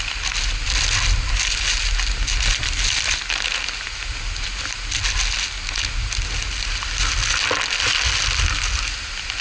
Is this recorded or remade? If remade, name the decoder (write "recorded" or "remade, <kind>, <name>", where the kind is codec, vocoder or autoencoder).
recorded